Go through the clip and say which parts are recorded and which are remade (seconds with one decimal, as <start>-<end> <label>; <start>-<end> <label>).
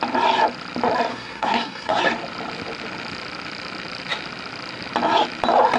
0.0-1.1 recorded; 1.1-2.0 remade; 2.0-5.8 recorded